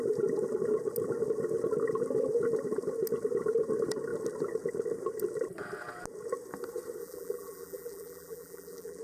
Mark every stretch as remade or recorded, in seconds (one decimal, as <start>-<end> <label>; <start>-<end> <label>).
0.0-7.0 recorded; 7.0-9.0 remade